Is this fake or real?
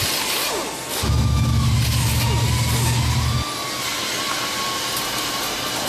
real